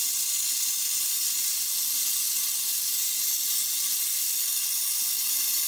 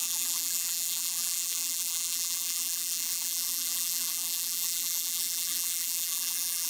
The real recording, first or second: first